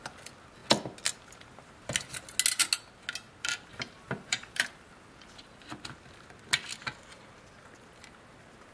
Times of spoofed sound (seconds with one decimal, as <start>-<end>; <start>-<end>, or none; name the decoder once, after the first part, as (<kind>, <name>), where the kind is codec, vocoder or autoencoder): 3.7-4.9 (vocoder, BigVGAN v2)